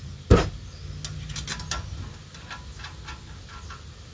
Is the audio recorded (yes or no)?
yes